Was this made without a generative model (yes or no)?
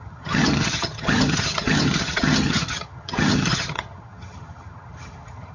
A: no